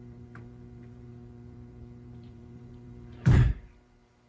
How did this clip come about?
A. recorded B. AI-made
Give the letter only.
B